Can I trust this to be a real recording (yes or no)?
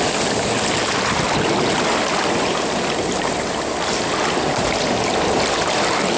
yes